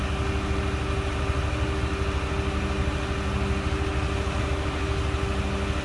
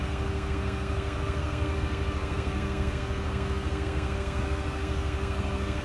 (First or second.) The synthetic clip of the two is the second